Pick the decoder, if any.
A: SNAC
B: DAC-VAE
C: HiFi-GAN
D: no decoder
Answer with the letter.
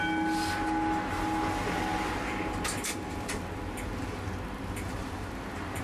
D